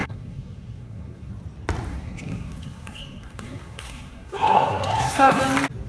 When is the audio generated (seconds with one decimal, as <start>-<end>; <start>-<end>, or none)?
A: 0.0-1.3; 1.9-5.4